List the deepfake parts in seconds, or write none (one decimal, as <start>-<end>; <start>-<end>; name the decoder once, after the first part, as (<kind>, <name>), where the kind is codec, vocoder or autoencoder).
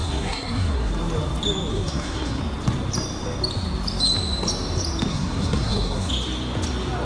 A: 0.0-0.9 (codec, SNAC); 1.7-2.4; 5.1-6.1